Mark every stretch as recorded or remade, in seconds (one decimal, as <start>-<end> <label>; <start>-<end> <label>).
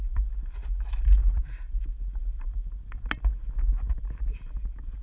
0.0-5.0 recorded